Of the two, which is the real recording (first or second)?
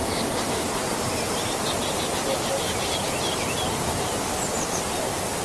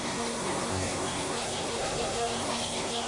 first